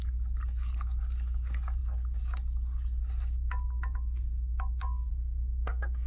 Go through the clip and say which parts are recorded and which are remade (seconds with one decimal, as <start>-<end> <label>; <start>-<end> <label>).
0.0-5.1 recorded; 5.1-6.1 remade